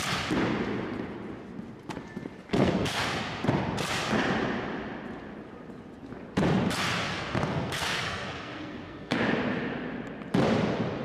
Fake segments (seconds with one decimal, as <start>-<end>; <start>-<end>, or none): 2.5-3.2; 7.1-9.2